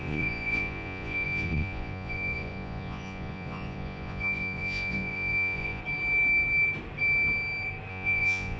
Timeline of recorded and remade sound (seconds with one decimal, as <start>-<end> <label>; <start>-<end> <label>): 0.0-5.8 remade; 5.8-7.9 recorded; 7.9-8.6 remade